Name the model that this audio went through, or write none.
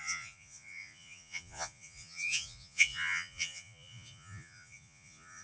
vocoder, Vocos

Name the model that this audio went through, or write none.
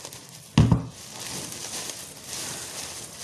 none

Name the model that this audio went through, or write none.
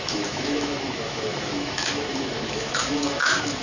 autoencoder, DAC-VAE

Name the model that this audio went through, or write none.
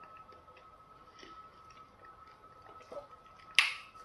none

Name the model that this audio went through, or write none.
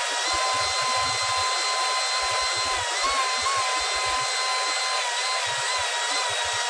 none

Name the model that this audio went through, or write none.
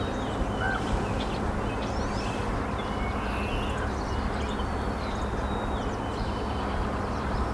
none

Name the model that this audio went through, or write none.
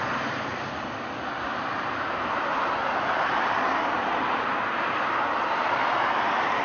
none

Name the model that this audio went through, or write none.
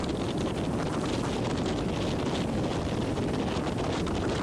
none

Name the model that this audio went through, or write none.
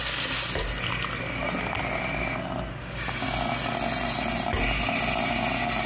none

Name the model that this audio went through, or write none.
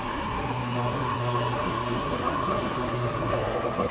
codec, SNAC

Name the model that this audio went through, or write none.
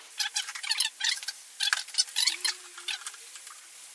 none